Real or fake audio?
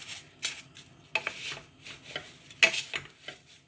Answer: real